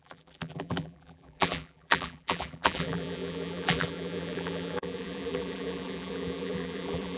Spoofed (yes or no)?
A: yes